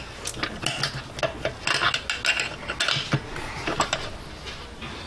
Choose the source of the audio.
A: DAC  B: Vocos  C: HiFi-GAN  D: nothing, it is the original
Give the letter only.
D